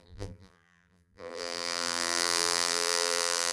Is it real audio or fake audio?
fake